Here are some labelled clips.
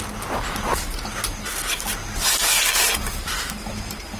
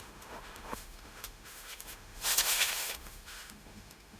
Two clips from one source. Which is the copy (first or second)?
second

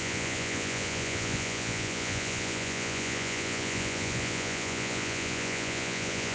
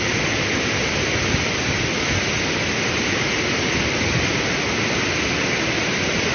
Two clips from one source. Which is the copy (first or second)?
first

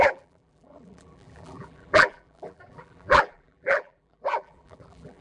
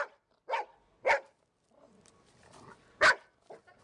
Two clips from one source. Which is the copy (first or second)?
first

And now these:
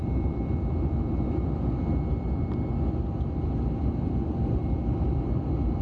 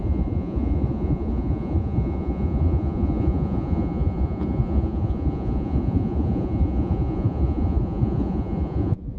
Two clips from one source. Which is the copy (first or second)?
second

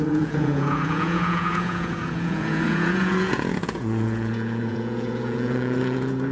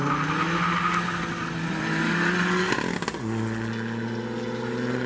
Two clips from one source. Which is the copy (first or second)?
first